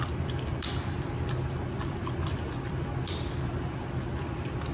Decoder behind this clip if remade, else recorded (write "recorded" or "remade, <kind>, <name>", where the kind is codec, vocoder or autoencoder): recorded